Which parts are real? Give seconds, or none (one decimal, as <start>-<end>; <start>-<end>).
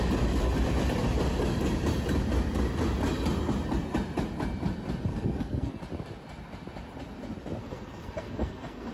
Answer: 0.0-5.1; 5.8-7.6